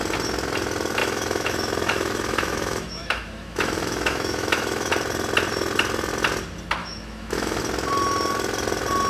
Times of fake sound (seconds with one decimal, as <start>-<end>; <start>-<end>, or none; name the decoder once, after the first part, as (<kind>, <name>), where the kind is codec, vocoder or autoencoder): 1.0-4.9 (autoencoder, DAC-VAE); 6.8-7.6